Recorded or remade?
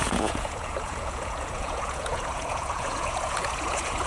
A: remade